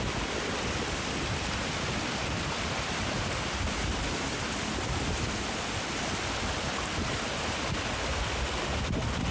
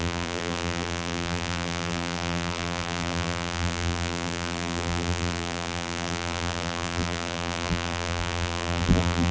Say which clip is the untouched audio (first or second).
first